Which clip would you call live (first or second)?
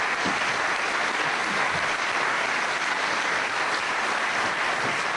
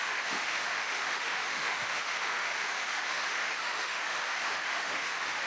first